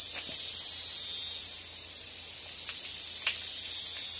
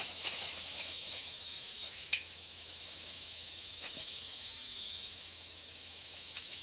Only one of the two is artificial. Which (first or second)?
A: second